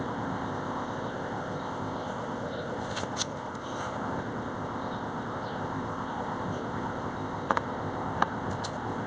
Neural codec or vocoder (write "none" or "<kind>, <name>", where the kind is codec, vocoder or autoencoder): codec, ZipCodec